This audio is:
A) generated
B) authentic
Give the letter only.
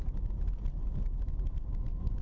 B